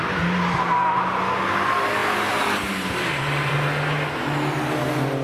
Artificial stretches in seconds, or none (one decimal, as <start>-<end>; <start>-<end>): none